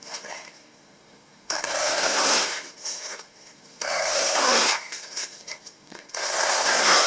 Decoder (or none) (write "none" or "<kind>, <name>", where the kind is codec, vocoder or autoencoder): codec, SNAC